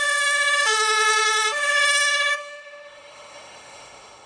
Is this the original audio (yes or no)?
no